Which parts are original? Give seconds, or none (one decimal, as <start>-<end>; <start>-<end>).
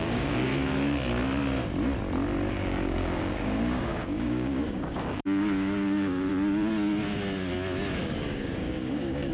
0.5-2.5; 6.3-8.0